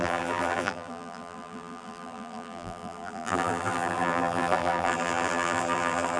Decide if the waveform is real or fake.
fake